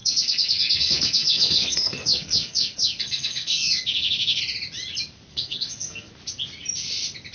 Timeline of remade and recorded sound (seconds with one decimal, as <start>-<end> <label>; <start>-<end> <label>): 0.0-4.4 remade; 4.4-5.3 recorded; 5.3-6.1 remade; 6.1-7.3 recorded